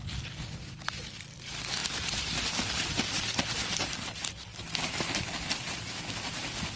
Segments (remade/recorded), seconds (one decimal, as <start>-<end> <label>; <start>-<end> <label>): 0.0-1.8 remade; 1.8-3.1 recorded; 3.1-4.5 remade; 4.5-5.4 recorded; 5.4-6.8 remade